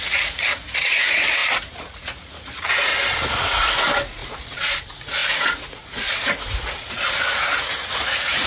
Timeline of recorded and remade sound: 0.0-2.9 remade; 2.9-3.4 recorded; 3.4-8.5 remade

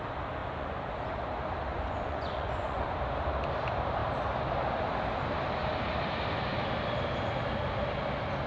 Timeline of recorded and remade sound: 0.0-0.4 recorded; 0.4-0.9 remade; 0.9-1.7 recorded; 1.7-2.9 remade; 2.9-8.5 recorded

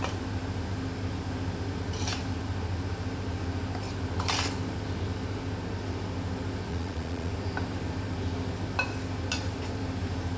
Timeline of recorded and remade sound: 0.0-6.7 recorded; 6.7-7.3 remade; 7.3-10.4 recorded